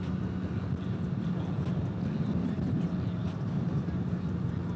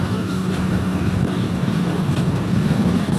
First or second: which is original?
first